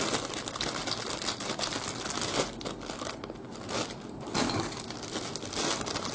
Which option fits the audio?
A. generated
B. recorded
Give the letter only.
B